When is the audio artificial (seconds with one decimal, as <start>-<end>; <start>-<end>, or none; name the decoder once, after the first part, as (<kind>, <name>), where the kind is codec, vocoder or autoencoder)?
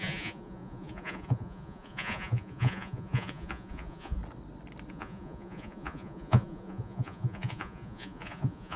0.0-4.2 (vocoder, Vocos); 4.9-8.8